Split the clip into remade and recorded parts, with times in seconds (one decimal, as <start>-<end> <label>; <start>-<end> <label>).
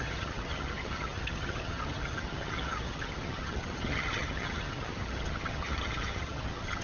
0.0-6.8 remade